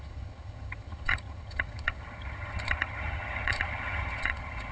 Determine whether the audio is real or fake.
fake